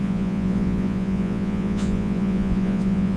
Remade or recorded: remade